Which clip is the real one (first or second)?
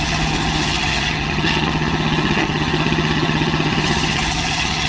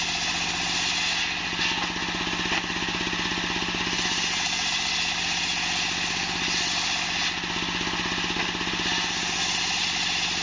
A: second